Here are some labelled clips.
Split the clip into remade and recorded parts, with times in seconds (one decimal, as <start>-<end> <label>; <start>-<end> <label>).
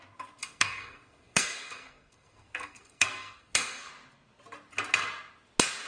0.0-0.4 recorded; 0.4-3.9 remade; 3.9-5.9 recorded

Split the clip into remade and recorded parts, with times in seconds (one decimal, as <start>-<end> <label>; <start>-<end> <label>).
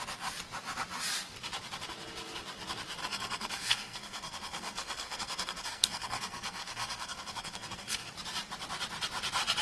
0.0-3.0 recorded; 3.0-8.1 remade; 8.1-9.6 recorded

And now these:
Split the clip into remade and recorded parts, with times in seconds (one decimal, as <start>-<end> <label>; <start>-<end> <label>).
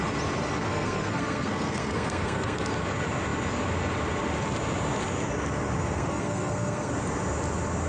0.0-0.6 recorded; 0.6-2.7 remade; 2.7-5.8 recorded; 5.8-6.9 remade; 6.9-7.9 recorded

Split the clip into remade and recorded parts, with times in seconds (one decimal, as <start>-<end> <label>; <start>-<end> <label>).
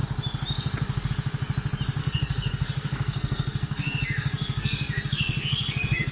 0.0-2.0 recorded; 2.0-6.1 remade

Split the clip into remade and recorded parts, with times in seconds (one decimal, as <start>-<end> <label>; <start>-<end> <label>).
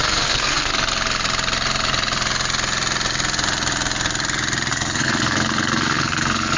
0.0-0.7 remade; 0.7-4.7 recorded; 4.7-6.6 remade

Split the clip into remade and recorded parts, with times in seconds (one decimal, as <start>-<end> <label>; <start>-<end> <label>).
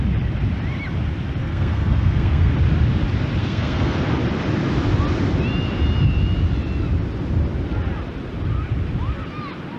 0.0-1.4 recorded; 1.4-2.5 remade; 2.5-3.4 recorded; 3.4-4.0 remade; 4.0-9.8 recorded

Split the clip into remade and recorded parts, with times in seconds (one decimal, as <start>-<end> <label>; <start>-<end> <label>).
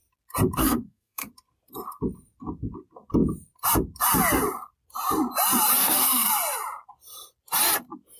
0.0-0.6 recorded; 0.6-1.3 remade; 1.3-5.8 recorded; 5.8-6.3 remade; 6.3-8.2 recorded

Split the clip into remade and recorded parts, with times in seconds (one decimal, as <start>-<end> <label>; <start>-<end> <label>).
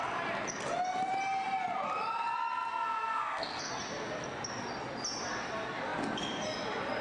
0.0-2.7 recorded; 2.7-3.7 remade; 3.7-7.0 recorded